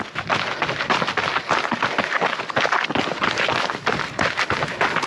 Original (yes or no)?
yes